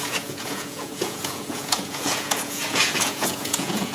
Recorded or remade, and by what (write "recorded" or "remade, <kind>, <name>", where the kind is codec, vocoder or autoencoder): remade, vocoder, Vocos